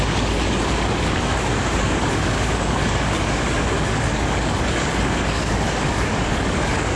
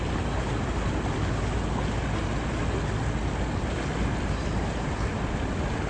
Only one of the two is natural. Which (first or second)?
second